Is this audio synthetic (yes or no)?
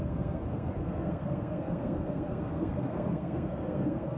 yes